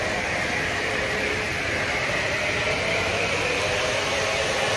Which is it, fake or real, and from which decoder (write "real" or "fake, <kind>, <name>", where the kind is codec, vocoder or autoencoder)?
fake, vocoder, BigVGAN v2